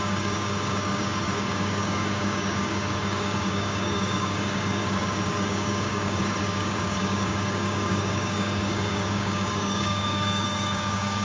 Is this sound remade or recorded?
remade